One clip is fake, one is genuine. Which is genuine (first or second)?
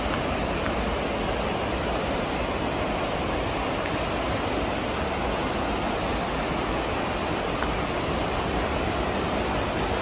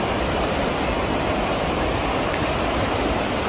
first